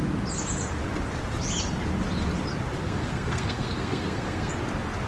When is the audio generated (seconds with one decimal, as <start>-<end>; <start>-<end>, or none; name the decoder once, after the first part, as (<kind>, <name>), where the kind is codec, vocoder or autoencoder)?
2.8-4.5 (codec, SNAC)